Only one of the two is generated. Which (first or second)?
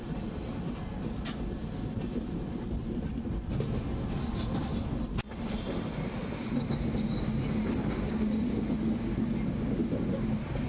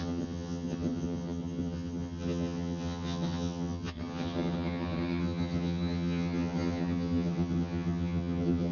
second